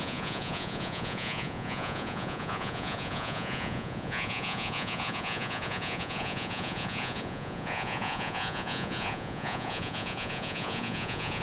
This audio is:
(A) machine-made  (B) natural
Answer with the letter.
A